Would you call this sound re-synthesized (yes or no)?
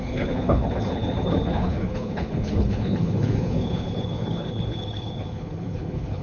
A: yes